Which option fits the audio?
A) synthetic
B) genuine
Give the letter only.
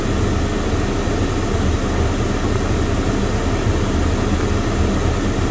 B